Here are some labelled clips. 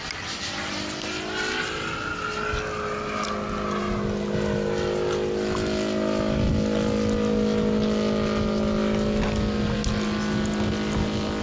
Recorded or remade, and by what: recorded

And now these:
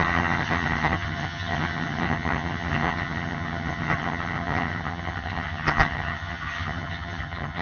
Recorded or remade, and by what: remade, vocoder, HiFi-GAN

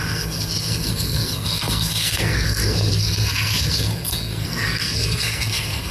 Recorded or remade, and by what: remade, codec, SNAC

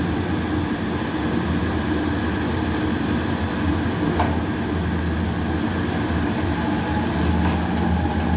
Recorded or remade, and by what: recorded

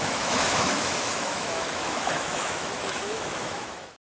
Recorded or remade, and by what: remade, autoencoder, DAC-VAE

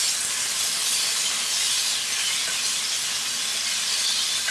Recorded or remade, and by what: recorded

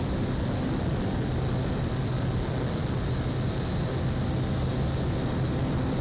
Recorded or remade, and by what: recorded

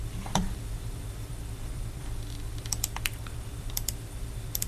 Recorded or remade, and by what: remade, vocoder, BigVGAN v2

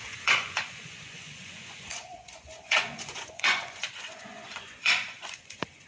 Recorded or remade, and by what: remade, vocoder, Vocos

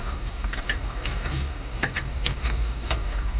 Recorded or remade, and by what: remade, codec, DAC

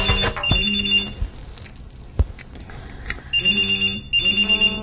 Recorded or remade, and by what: recorded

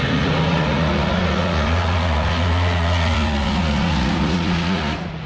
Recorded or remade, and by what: remade, vocoder, Vocos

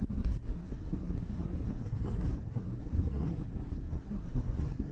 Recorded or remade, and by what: remade, codec, SNAC